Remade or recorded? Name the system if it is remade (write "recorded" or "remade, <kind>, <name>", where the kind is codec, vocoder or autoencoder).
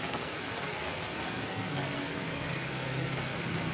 remade, codec, SNAC